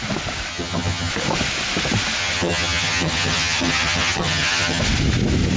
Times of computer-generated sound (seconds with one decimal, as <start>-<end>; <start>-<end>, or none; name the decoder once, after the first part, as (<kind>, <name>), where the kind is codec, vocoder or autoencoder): 0.5-1.1 (vocoder, HiFi-GAN); 2.2-4.8